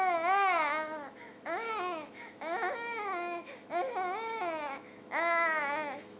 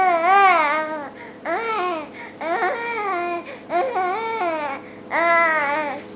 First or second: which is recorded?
second